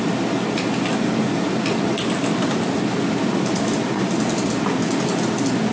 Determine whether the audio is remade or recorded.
recorded